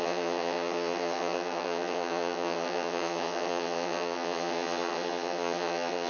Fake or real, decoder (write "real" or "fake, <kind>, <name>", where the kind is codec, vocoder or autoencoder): fake, vocoder, HiFi-GAN